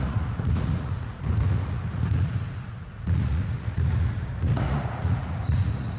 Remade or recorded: remade